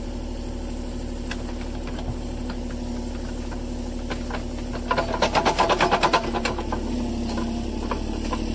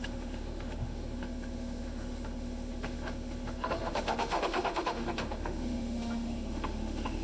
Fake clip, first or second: second